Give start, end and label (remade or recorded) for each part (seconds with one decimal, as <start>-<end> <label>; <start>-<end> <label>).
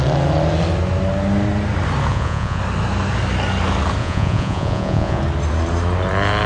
0.0-2.1 recorded; 2.1-2.6 remade; 2.6-4.0 recorded; 4.0-5.2 remade; 5.2-6.5 recorded